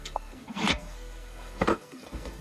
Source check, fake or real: fake